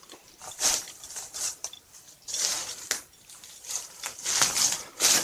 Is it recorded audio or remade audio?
remade